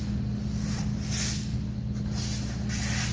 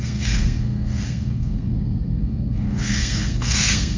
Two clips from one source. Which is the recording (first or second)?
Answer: first